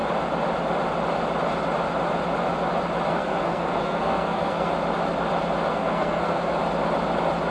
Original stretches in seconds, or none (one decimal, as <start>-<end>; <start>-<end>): 0.0-3.1; 4.7-5.7; 6.5-7.5